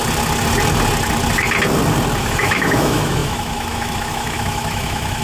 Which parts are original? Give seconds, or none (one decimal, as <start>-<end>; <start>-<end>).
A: 0.0-2.2

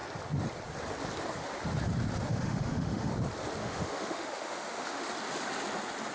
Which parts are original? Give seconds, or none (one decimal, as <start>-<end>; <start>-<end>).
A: 0.0-2.3; 3.1-3.6; 5.1-6.1

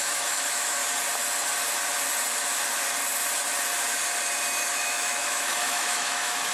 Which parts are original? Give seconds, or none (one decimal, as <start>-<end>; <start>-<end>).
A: 0.8-4.7

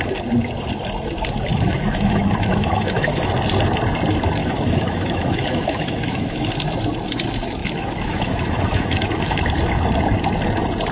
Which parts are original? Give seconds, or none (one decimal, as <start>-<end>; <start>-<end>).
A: 0.0-1.5; 3.3-4.4; 6.5-7.6; 9.4-10.9

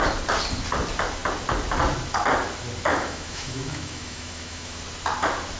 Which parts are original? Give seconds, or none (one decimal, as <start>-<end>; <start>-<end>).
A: 0.0-2.9; 4.8-5.6